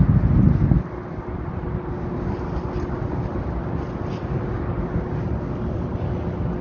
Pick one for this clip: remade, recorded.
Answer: recorded